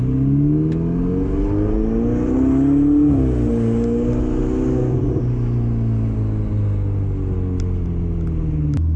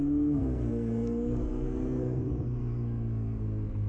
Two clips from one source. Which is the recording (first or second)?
first